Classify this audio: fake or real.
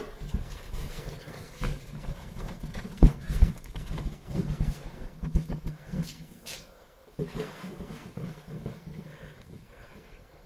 fake